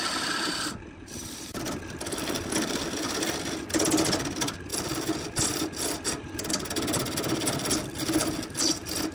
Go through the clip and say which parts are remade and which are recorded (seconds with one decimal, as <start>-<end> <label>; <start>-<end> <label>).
0.0-9.1 recorded